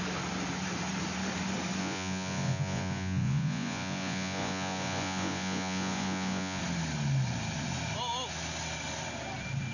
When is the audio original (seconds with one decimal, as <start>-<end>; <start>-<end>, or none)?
0.0-1.8; 6.6-9.7